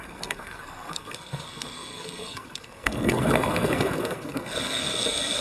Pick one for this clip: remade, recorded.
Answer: remade